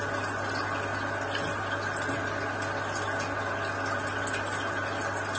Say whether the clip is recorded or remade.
recorded